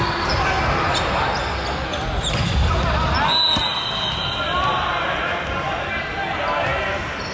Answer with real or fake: real